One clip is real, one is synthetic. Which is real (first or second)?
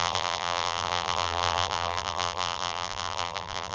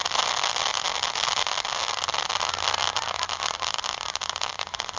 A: second